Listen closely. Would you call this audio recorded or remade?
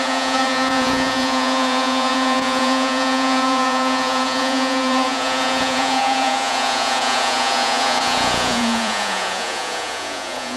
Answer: remade